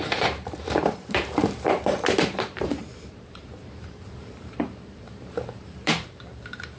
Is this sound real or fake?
fake